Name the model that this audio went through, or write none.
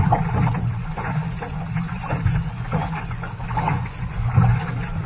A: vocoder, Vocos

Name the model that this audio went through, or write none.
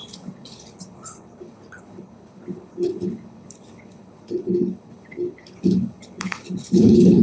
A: codec, HILCodec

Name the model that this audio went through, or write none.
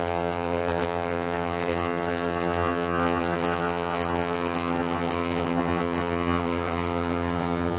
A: vocoder, HiFi-GAN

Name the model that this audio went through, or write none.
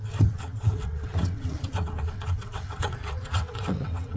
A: vocoder, WaveNeXt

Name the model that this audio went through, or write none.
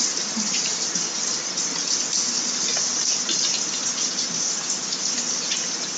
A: none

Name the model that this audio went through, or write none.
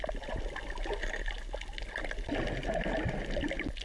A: none